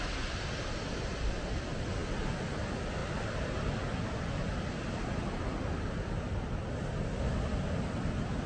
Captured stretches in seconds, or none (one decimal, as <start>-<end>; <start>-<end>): 0.0-8.5